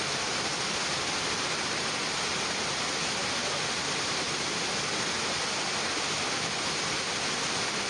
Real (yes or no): yes